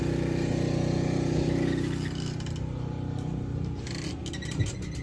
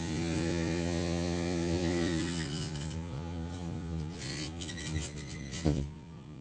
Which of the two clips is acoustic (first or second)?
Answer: first